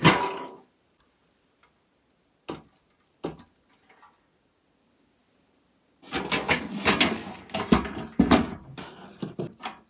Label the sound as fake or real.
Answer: real